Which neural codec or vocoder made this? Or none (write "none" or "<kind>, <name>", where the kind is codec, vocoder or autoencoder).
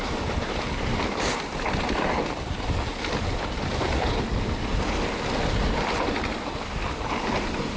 none